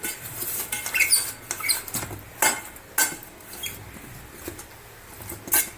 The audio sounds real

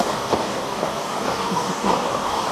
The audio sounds fake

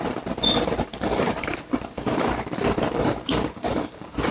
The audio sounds fake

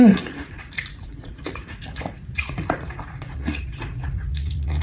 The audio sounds fake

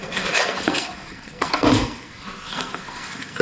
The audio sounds fake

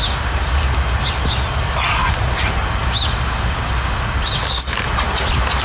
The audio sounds real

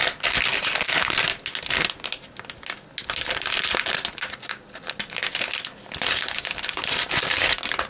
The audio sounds real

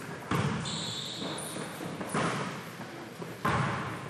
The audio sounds real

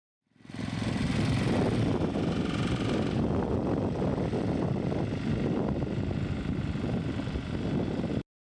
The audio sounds real